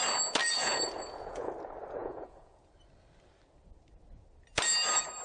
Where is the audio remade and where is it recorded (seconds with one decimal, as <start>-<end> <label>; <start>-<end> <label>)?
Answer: 0.0-0.4 recorded; 0.4-1.5 remade; 1.5-2.0 recorded; 2.0-2.7 remade; 2.7-5.2 recorded